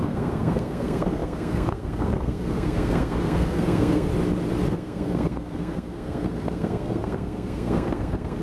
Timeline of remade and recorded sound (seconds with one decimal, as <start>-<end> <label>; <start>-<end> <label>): 0.0-4.1 remade; 4.1-4.7 recorded; 4.7-8.4 remade